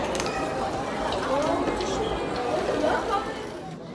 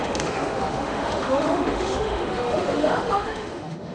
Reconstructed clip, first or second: second